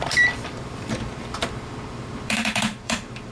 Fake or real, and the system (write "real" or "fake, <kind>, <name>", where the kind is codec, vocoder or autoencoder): fake, vocoder, BigVGAN v2